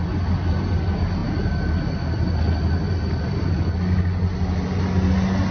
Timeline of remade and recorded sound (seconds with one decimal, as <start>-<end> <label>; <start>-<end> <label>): 0.0-5.5 recorded